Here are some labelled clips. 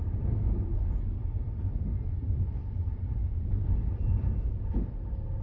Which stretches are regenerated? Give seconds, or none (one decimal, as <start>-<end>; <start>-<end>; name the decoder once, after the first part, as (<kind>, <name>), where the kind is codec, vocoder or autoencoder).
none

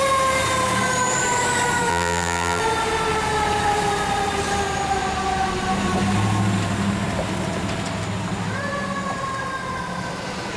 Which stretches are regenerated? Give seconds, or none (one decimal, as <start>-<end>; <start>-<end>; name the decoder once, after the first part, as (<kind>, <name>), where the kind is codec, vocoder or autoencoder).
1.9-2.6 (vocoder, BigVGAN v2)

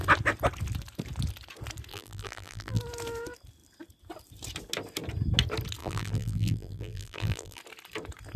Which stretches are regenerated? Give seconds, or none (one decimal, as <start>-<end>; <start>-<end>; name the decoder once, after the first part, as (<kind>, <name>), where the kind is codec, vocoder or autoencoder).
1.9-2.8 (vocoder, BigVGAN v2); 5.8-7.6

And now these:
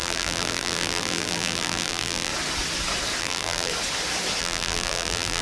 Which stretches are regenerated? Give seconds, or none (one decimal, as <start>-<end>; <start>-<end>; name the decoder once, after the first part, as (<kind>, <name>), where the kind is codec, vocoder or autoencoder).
0.0-2.3 (vocoder, BigVGAN v2); 3.2-3.7; 4.4-5.4

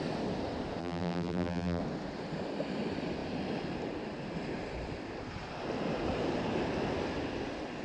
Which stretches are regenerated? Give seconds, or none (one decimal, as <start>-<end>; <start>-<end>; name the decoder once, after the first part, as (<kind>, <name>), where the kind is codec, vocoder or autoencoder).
0.8-1.8 (vocoder, BigVGAN v2)